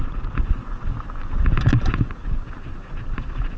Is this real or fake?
real